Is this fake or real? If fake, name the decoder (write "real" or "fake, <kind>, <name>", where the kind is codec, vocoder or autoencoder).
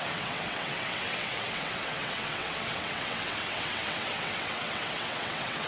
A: fake, vocoder, WaveNeXt